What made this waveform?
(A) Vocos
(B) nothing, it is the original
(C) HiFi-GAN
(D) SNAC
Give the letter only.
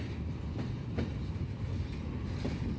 B